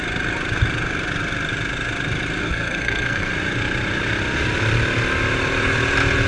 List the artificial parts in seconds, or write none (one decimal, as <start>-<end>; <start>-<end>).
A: 2.4-3.3